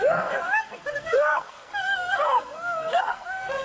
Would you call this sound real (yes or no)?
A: no